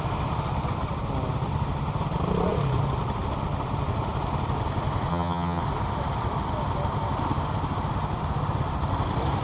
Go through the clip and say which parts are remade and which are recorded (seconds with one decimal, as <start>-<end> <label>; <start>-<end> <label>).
0.0-5.1 recorded; 5.1-5.6 remade; 5.6-9.4 recorded